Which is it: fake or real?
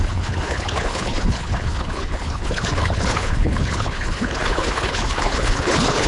fake